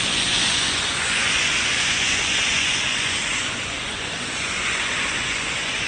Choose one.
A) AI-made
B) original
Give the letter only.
A